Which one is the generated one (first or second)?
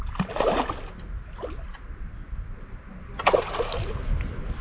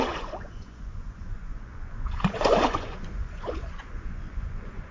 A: second